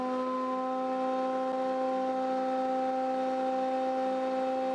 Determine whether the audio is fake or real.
real